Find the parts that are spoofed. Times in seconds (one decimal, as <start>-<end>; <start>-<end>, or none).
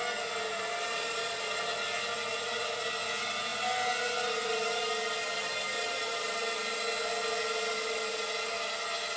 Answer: 2.3-2.9